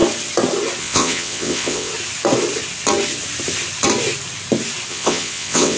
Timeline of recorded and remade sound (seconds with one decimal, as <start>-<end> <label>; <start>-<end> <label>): 0.0-0.8 recorded; 0.8-1.9 remade; 1.9-4.9 recorded; 4.9-5.8 remade